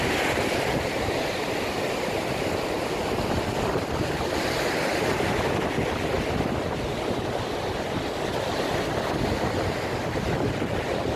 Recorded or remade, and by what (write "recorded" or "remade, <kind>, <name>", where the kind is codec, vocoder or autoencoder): recorded